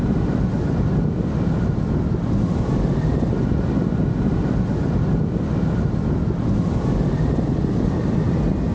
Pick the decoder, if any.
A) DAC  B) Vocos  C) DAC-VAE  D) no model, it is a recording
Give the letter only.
D